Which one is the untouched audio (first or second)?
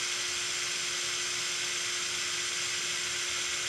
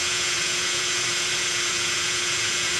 first